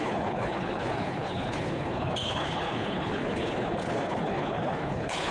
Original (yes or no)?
no